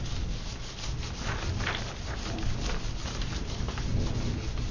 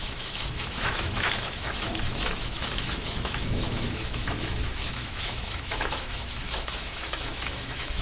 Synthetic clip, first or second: second